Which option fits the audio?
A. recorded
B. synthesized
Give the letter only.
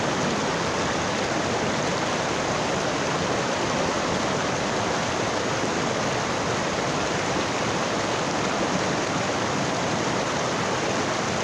A